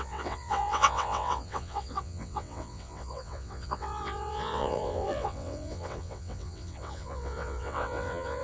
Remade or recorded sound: remade